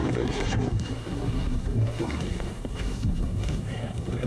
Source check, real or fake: fake